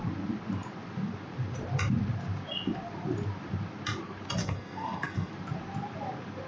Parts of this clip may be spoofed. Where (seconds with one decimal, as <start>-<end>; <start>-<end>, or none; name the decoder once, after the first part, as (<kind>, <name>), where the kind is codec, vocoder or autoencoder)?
4.4-5.3 (codec, SNAC)